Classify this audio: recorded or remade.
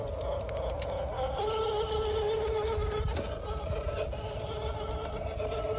recorded